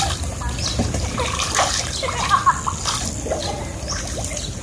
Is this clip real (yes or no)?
yes